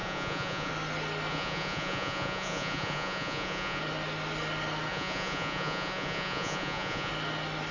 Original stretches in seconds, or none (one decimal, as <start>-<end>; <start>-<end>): 0.7-1.3; 3.8-4.9; 7.1-7.7